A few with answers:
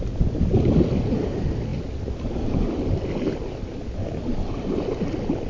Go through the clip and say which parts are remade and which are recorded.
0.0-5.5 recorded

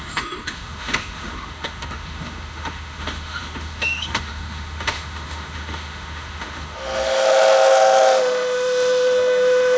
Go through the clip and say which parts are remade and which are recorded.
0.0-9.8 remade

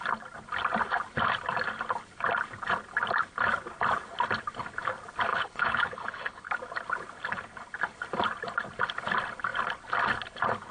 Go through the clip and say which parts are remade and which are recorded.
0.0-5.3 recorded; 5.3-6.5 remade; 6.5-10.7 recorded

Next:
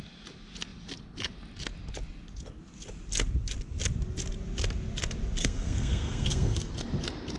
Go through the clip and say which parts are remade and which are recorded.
0.0-5.4 recorded; 5.4-6.7 remade; 6.7-7.4 recorded

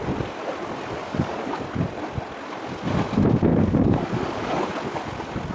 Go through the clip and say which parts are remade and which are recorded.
0.0-1.0 recorded; 1.0-1.5 remade; 1.5-3.5 recorded; 3.5-4.7 remade; 4.7-5.5 recorded